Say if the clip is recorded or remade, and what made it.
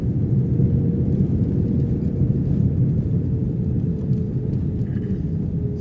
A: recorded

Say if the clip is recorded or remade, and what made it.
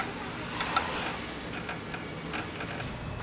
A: recorded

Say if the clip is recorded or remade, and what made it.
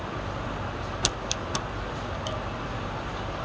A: recorded